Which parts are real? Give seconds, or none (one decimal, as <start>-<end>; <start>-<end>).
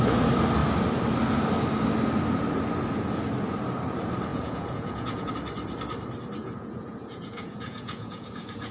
0.0-4.3; 5.3-6.4